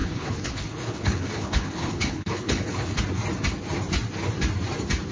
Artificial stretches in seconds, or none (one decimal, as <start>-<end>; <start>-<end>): 0.0-3.0